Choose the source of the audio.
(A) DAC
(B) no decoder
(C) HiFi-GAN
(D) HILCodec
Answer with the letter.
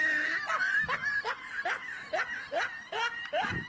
B